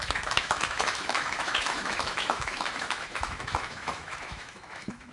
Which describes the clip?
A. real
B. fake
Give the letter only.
B